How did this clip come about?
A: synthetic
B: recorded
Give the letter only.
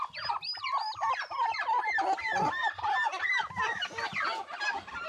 B